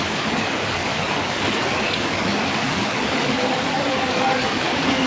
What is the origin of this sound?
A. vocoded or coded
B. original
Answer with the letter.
A